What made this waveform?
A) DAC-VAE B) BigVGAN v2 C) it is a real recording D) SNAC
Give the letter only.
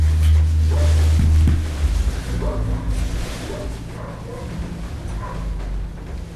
C